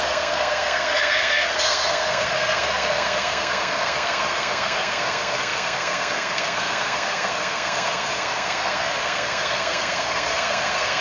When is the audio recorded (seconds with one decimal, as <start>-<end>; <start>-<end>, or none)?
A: none